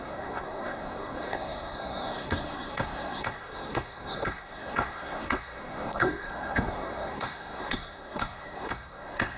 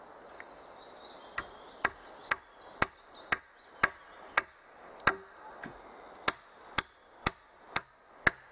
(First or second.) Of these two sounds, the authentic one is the second